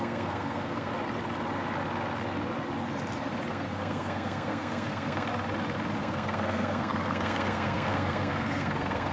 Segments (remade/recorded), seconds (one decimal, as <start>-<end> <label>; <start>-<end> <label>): 0.0-0.9 remade; 0.9-3.5 recorded; 3.5-5.3 remade; 5.3-6.0 recorded; 6.0-9.1 remade